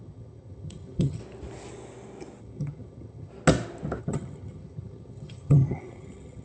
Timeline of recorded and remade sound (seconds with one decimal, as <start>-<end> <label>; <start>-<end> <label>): 0.0-1.2 remade; 1.2-2.4 recorded; 2.4-3.3 remade; 3.3-4.0 recorded; 4.0-6.4 remade